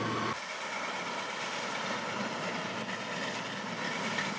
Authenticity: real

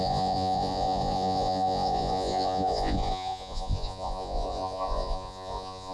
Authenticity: fake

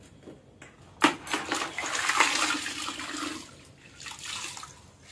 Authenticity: real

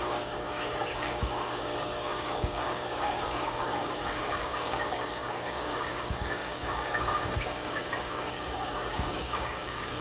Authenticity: fake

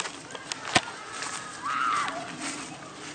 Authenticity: real